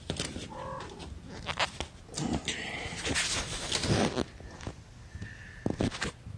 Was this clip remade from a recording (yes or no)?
no